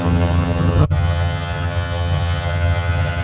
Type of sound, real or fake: fake